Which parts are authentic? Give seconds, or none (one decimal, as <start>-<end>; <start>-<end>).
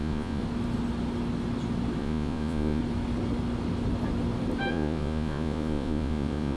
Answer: 0.4-2.0; 2.8-4.7